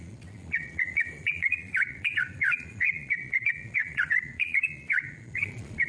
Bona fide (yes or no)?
no